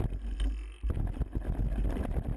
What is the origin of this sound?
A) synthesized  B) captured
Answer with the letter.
B